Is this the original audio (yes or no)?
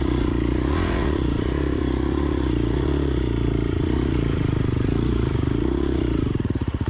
no